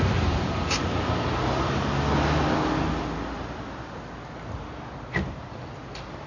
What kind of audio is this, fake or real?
real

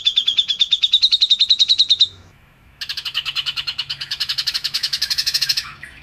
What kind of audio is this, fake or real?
fake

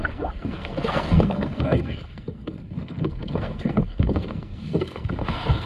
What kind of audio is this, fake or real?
fake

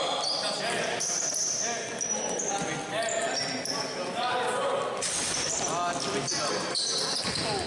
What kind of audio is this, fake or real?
real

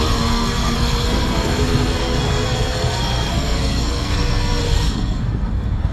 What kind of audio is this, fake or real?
fake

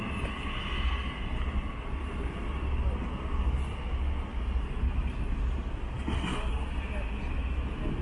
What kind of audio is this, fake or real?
real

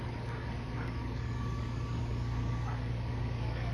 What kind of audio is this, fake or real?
fake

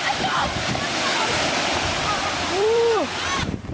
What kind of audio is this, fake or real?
fake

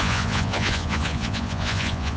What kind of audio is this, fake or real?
fake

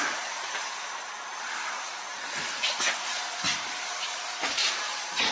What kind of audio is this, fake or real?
fake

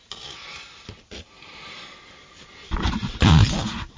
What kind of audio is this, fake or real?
real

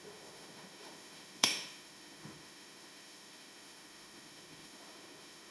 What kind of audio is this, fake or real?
fake